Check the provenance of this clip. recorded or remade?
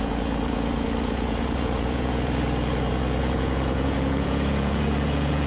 remade